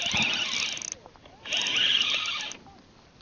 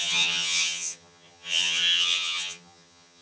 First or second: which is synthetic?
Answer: second